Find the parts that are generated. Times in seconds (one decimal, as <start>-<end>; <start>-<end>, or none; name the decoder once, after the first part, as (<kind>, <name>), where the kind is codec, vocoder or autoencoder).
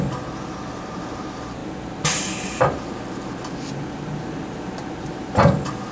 none